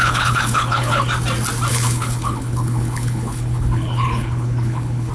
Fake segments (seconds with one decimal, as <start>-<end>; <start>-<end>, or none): 0.0-1.0; 1.7-5.1